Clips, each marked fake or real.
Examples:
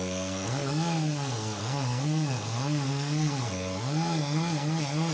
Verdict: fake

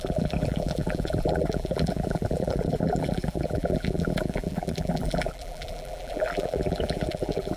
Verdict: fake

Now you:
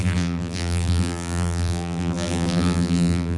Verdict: fake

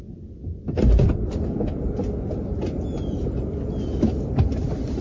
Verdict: real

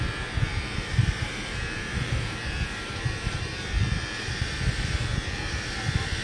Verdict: fake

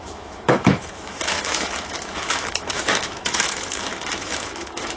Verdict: fake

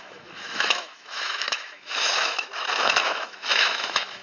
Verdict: fake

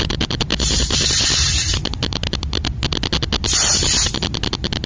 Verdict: real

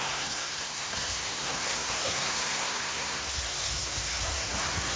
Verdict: fake